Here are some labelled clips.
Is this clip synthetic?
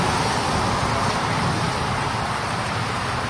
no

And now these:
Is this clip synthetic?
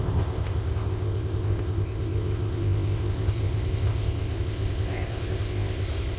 yes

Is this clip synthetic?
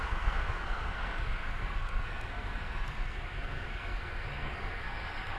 yes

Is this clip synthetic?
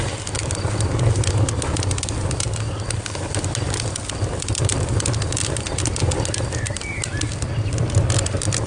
no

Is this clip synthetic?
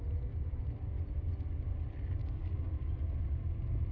no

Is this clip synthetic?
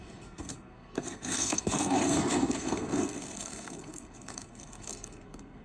yes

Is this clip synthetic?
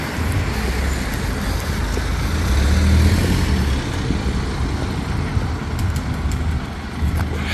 no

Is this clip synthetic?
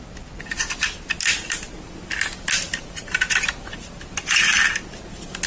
no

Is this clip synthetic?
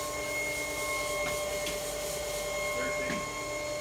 no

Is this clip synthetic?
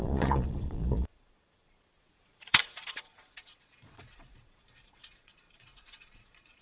yes